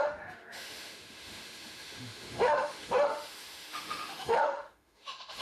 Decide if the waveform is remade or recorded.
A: remade